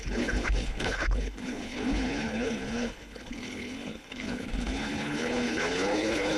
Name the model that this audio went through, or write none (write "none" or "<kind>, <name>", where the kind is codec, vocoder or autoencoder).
codec, HILCodec